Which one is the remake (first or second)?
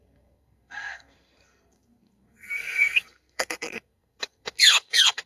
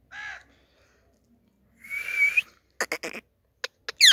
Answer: first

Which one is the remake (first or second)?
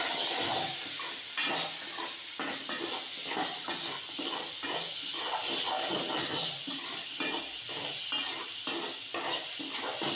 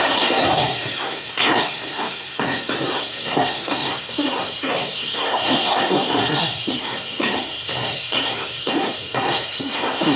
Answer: second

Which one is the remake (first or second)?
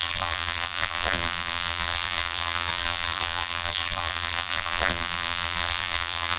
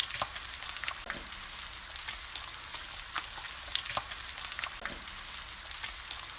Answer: first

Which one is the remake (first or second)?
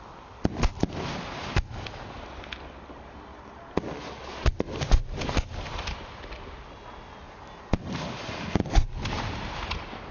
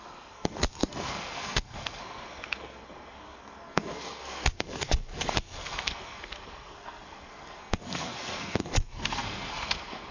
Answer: second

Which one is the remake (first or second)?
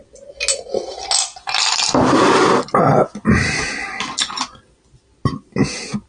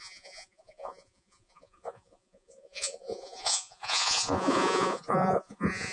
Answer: second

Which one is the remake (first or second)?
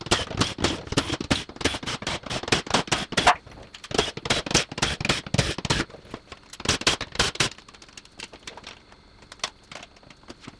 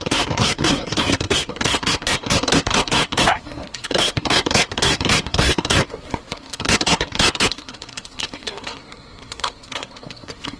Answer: second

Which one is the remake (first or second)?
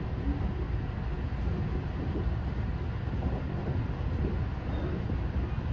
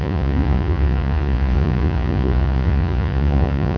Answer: second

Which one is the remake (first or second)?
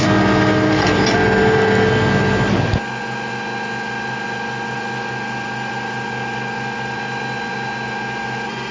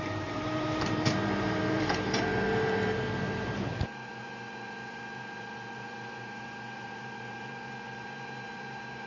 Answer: second